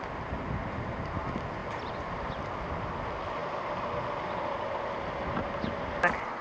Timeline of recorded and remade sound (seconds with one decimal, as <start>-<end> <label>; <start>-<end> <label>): 0.0-6.4 recorded